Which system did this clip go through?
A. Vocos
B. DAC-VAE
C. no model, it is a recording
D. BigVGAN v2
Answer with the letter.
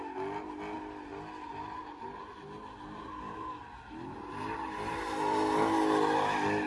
C